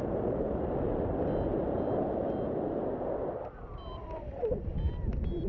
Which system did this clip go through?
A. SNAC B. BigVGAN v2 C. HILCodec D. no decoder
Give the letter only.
D